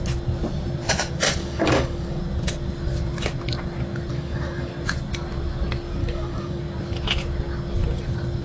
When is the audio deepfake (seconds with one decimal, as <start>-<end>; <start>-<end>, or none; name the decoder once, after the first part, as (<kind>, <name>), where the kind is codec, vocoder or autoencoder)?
1.4-2.2 (codec, DAC); 4.1-4.7; 6.0-6.6